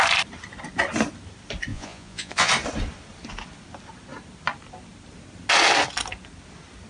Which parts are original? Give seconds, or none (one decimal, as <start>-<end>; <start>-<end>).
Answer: 0.0-1.7; 2.5-6.9